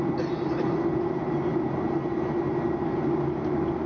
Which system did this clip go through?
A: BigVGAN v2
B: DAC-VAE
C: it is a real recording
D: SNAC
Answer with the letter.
C